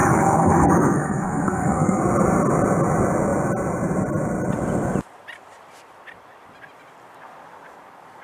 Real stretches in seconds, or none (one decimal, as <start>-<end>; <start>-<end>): 2.0-8.2